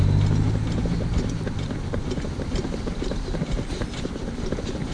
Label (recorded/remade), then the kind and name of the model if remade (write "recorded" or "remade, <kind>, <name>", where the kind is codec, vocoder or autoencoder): recorded